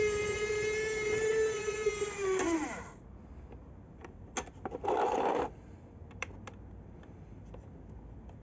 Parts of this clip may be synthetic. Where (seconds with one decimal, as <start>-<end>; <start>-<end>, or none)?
none